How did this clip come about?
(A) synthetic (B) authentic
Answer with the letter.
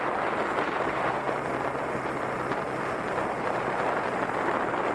B